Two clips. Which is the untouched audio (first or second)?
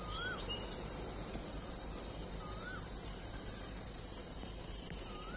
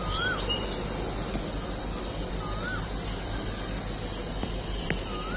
second